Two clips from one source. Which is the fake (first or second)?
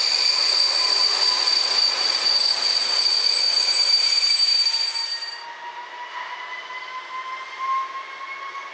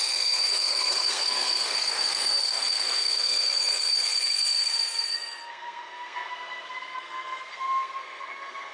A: second